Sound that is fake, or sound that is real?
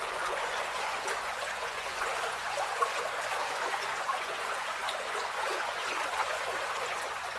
fake